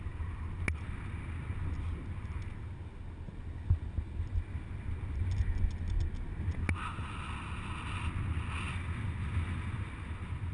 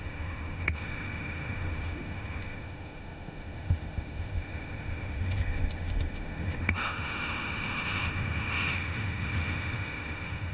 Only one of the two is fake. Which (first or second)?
second